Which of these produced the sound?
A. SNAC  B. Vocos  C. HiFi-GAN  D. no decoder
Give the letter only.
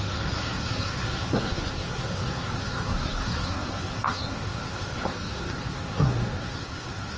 A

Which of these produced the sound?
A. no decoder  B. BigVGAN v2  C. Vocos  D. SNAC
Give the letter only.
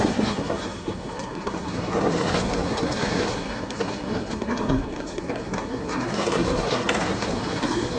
D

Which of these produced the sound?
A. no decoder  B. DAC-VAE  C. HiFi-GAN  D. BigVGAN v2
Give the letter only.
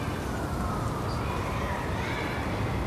A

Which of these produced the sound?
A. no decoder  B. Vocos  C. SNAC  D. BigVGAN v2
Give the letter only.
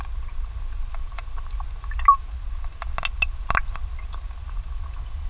A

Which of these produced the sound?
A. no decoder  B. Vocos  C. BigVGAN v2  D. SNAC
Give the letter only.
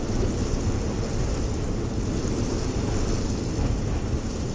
A